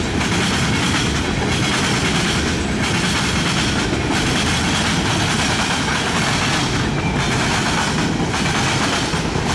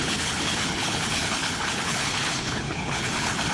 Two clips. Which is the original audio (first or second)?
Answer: first